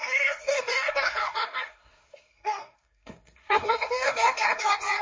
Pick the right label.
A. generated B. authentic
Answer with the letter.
A